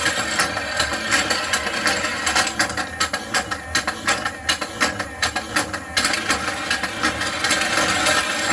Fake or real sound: real